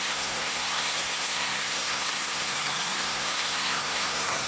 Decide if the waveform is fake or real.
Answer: fake